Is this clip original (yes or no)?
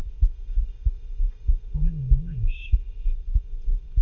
no